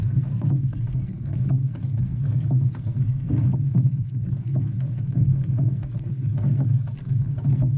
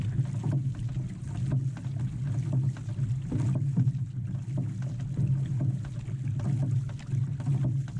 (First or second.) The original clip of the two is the second